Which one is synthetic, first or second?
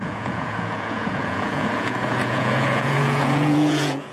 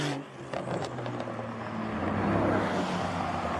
first